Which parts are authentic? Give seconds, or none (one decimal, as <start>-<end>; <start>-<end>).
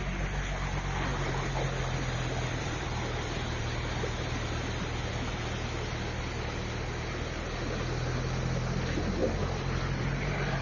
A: 0.0-1.1; 5.1-9.2; 10.1-10.6